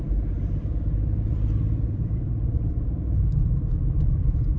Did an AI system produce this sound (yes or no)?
yes